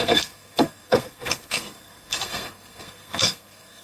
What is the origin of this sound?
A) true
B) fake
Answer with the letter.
B